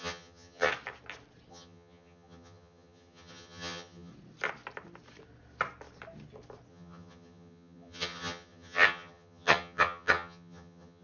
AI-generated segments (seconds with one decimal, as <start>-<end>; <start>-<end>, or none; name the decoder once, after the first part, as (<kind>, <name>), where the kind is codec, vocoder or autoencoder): 0.0-0.7 (vocoder, HiFi-GAN); 1.5-4.1; 6.7-11.0